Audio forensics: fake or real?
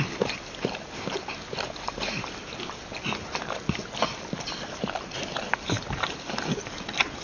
real